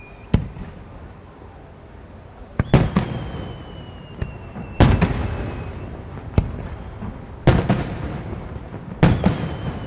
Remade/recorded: recorded